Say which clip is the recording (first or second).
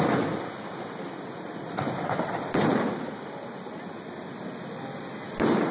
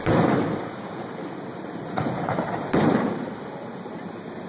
first